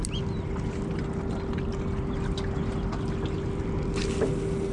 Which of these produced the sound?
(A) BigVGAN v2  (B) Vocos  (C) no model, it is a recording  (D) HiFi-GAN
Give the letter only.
C